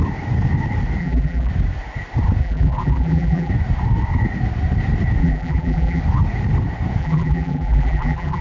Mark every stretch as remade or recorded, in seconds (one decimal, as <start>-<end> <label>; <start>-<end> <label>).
0.0-1.0 recorded; 1.0-1.5 remade; 1.5-2.4 recorded; 2.4-3.5 remade; 3.5-5.2 recorded; 5.2-6.0 remade; 6.0-7.0 recorded; 7.0-8.4 remade